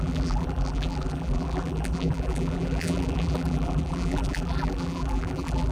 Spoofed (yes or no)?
yes